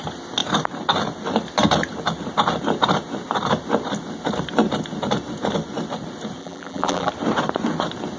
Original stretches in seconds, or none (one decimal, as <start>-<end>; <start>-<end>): 0.0-6.4; 7.1-8.2